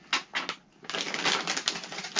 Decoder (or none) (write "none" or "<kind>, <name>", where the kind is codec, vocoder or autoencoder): none